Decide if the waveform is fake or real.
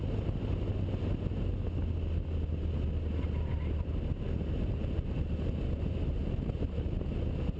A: real